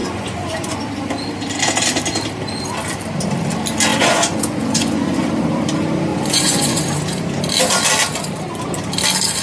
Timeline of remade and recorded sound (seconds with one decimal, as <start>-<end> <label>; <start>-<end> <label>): 0.0-0.8 remade; 0.8-3.9 recorded; 3.9-5.3 remade; 5.3-6.1 recorded; 6.1-6.8 remade; 6.8-9.4 recorded